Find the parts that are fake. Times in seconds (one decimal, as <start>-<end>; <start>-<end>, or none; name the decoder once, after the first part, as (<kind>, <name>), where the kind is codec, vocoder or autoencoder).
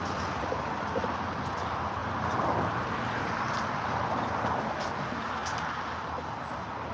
2.0-4.8 (vocoder, BigVGAN v2)